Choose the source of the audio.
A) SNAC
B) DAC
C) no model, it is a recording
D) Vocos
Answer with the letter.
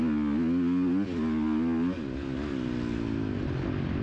C